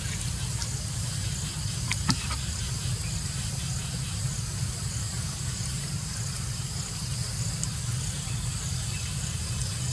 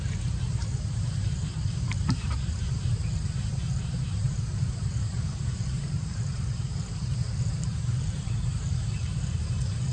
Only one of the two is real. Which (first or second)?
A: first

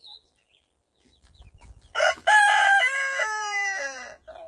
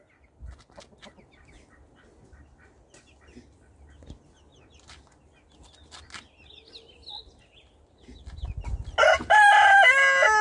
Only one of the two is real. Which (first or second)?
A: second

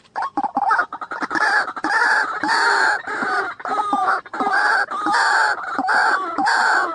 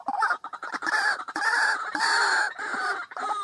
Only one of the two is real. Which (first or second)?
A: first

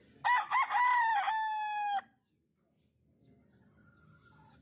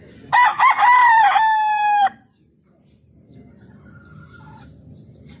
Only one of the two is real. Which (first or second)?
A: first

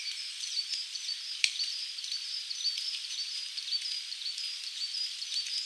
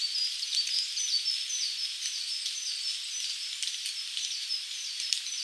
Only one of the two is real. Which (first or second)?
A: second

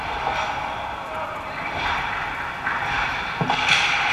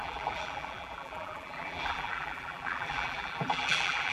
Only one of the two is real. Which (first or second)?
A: first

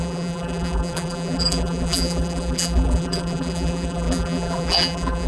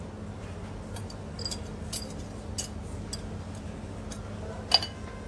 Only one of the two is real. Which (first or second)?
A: second